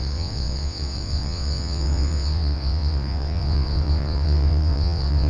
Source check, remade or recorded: remade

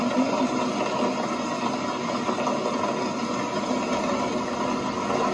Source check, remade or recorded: recorded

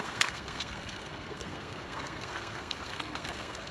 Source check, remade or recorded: remade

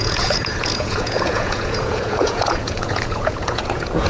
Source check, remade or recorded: remade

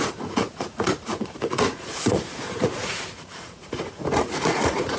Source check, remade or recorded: remade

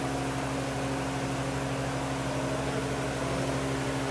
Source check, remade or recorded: recorded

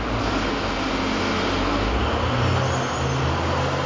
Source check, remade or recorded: recorded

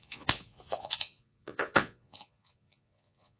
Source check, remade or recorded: remade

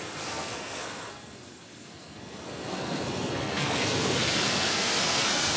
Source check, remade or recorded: remade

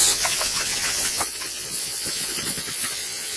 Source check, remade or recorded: remade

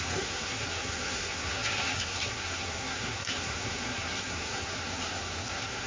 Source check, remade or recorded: remade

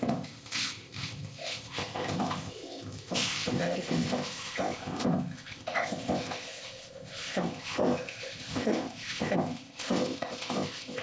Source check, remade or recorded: remade